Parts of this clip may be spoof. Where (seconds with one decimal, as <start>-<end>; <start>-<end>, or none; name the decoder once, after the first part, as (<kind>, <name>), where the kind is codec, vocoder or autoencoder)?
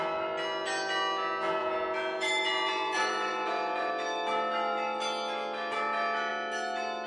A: 1.6-3.9 (vocoder, Vocos)